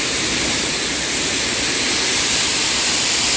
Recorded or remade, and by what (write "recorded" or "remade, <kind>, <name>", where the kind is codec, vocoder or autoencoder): recorded